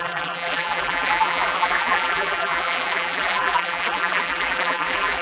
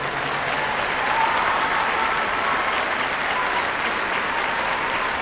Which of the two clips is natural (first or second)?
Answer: second